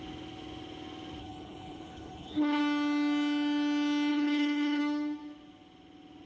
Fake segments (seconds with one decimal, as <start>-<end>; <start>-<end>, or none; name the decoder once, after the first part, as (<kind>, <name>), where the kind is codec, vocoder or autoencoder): 1.2-2.6 (codec, HILCodec); 4.1-4.8